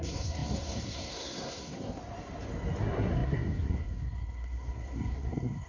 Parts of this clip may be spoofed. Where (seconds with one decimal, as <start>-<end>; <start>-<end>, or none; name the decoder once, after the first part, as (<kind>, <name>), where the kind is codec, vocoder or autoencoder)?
0.0-2.0 (codec, SNAC); 2.8-5.7